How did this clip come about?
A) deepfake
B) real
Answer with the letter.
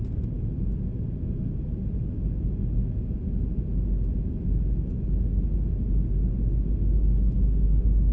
B